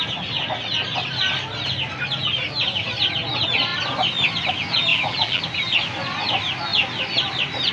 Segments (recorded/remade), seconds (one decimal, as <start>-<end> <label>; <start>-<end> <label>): 0.0-4.9 recorded; 4.9-5.4 remade; 5.4-7.7 recorded